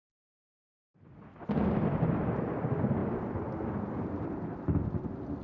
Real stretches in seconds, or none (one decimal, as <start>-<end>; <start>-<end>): 0.0-5.4